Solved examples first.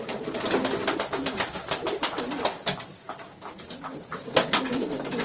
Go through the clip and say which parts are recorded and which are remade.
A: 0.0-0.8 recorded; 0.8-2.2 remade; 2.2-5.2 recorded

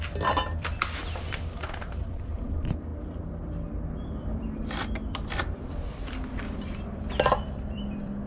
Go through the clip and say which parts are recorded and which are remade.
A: 0.0-8.3 remade

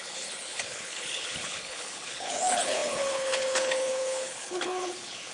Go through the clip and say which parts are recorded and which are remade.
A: 0.0-5.3 remade

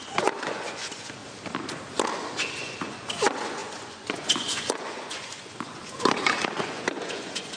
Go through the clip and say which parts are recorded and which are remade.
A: 0.0-1.2 remade; 1.2-2.1 recorded; 2.1-7.6 remade

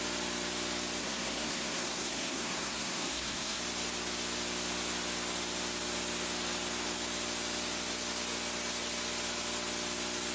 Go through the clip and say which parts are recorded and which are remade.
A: 0.0-1.0 recorded; 1.0-3.6 remade; 3.6-10.3 recorded